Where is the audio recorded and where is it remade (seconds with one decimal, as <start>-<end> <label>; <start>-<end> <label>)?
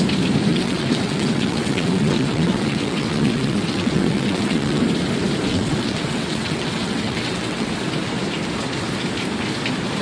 0.0-0.5 recorded; 0.5-4.8 remade; 4.8-5.5 recorded; 5.5-7.7 remade; 7.7-10.0 recorded